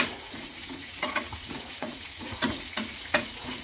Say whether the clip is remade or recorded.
remade